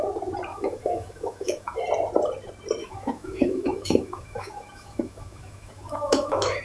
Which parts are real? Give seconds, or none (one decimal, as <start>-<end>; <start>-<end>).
0.0-0.5; 1.8-2.8